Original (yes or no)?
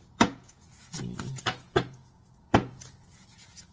no